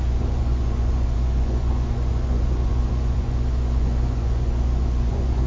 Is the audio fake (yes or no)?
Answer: yes